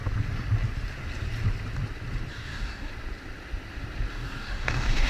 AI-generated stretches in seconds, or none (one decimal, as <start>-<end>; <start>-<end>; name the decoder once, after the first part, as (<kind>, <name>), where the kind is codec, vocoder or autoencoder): 2.3-2.9 (codec, DAC); 4.1-5.1